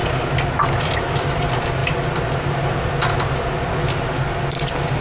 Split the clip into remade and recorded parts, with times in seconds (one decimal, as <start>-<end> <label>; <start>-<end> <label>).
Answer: 0.0-5.0 recorded